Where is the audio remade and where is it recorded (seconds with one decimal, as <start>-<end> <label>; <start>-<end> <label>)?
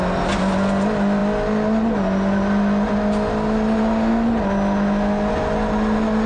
0.0-6.3 recorded